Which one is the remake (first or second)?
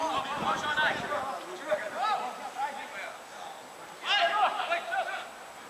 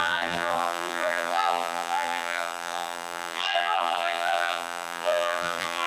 second